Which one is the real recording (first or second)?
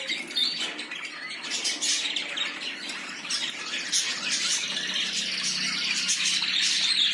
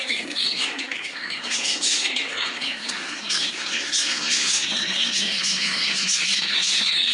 first